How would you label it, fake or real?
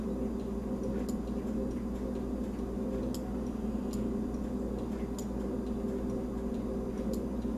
real